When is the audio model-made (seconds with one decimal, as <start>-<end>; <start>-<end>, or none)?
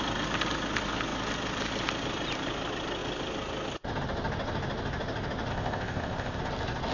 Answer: 5.5-6.4